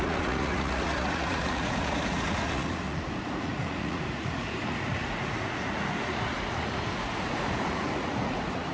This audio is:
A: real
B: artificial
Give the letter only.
B